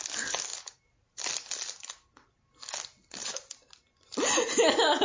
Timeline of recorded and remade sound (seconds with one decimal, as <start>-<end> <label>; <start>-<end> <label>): 0.0-0.5 recorded; 0.5-1.2 remade; 1.2-3.2 recorded; 3.2-3.8 remade; 3.8-5.0 recorded